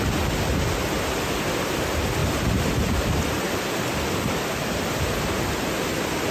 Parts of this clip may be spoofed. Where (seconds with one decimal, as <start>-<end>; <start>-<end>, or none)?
none